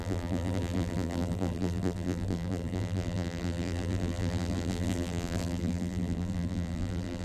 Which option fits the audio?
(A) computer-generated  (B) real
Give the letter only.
A